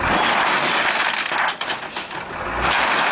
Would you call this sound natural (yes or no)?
yes